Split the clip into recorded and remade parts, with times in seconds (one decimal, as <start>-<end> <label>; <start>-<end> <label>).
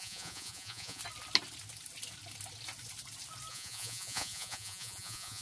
0.0-1.0 remade; 1.0-3.5 recorded; 3.5-5.4 remade